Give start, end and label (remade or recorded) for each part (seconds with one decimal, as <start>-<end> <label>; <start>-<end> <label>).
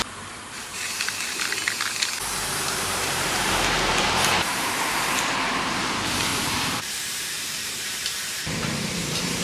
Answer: 0.0-1.6 remade; 1.6-2.4 recorded; 2.4-9.4 remade